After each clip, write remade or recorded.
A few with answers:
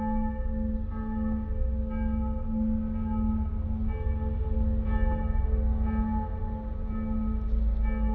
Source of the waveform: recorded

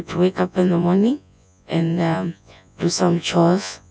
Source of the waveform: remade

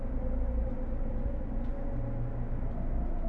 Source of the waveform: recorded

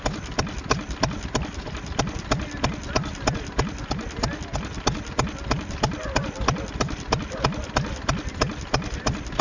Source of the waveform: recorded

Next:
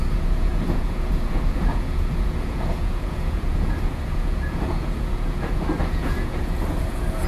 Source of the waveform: remade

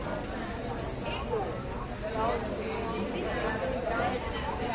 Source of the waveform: recorded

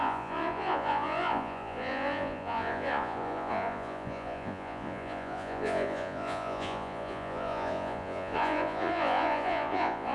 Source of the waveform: remade